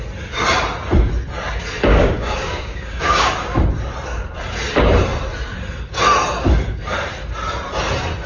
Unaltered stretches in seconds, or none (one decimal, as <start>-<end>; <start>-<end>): 0.0-1.9; 3.3-8.3